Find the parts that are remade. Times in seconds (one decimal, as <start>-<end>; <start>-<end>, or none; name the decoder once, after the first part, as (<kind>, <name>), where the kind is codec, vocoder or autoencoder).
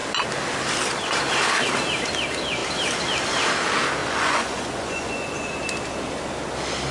4.0-5.5 (vocoder, Vocos)